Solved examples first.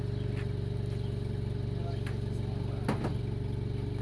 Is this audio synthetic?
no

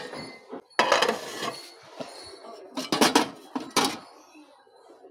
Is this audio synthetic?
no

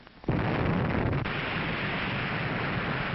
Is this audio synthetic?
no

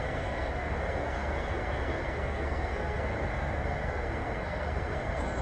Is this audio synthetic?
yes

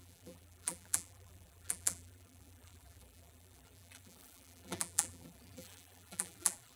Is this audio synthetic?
yes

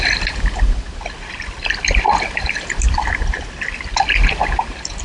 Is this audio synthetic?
no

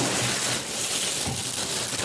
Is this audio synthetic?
no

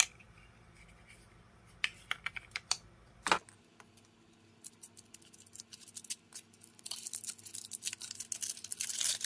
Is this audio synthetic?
no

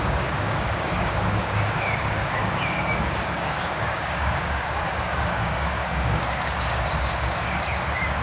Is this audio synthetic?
yes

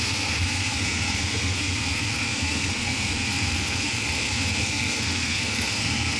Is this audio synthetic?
yes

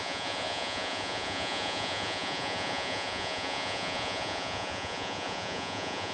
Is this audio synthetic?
yes